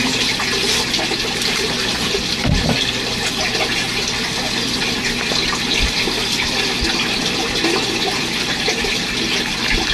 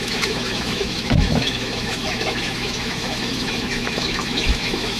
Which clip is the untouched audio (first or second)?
first